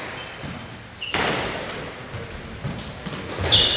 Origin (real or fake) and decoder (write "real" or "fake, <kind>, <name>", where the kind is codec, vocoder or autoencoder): real